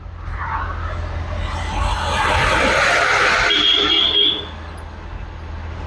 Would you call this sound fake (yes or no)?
no